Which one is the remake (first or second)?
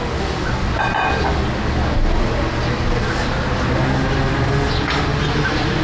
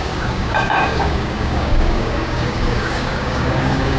second